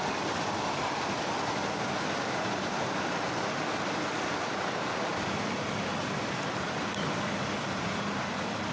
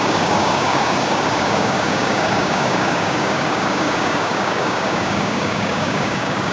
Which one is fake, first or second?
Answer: second